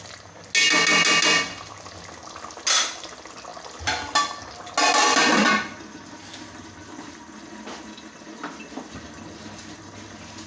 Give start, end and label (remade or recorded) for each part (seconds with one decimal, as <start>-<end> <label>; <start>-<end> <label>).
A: 0.0-10.5 recorded